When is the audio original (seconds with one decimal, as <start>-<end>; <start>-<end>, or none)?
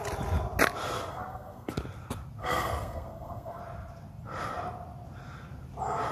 0.0-1.1; 1.7-2.4; 3.6-6.1